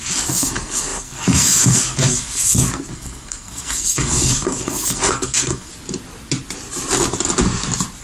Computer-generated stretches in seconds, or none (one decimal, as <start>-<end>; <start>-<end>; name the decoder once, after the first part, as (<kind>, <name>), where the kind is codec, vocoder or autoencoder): 0.0-5.7 (codec, SNAC)